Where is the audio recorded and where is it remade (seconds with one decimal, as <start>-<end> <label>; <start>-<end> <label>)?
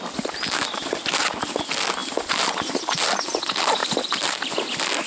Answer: 0.0-5.1 recorded